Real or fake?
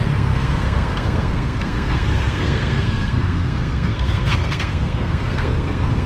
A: fake